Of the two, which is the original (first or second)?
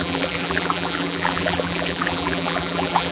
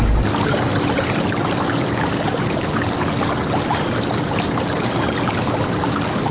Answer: second